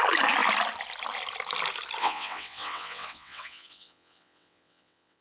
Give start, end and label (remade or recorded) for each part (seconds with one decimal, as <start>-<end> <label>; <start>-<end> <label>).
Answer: 0.0-2.0 recorded; 2.0-5.2 remade